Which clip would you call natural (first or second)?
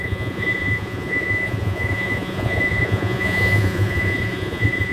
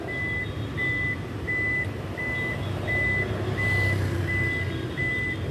second